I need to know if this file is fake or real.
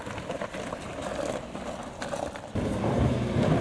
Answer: fake